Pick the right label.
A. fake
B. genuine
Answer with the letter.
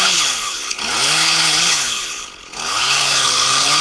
A